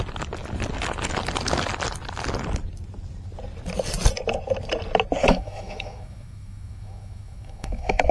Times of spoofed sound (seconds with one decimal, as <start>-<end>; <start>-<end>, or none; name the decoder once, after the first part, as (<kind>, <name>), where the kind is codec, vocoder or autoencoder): 5.2-8.1 (autoencoder, DAC-VAE)